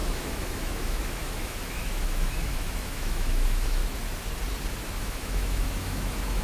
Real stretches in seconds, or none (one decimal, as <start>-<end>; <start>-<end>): 3.8-5.0